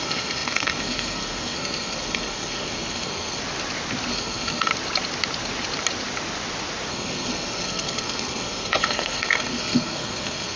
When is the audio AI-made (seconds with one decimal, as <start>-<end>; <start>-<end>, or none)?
0.0-3.4; 4.1-4.7; 6.9-10.6